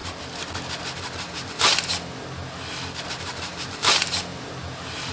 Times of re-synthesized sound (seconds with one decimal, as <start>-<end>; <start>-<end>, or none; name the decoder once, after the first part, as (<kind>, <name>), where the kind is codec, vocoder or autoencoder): 3.1-5.1 (vocoder, BigVGAN v2)